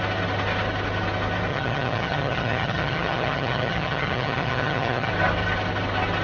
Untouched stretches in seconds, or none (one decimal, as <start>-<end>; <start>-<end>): 0.0-1.5; 5.1-6.2